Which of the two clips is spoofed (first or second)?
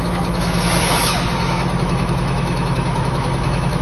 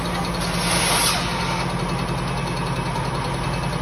first